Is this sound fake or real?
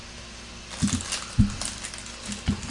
real